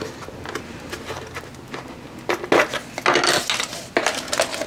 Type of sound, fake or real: real